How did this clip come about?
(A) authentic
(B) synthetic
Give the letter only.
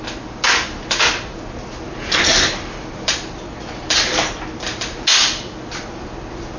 A